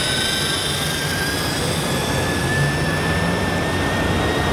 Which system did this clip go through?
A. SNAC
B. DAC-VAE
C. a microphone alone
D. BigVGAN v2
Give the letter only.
C